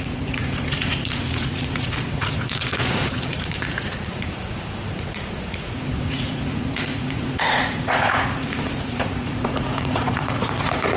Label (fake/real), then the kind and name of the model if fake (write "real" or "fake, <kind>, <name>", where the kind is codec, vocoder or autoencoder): fake, vocoder, Vocos